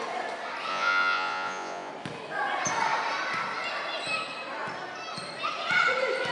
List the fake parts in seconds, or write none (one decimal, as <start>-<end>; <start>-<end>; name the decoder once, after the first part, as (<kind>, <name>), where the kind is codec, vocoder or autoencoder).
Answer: 0.7-1.9 (vocoder, Vocos)